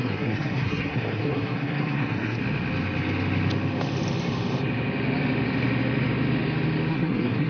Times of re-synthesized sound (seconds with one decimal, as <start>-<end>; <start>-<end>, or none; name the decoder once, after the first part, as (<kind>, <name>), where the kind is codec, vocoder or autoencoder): 0.0-2.4 (codec, SNAC); 6.9-7.5